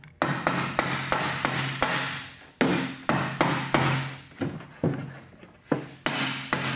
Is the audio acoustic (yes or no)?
yes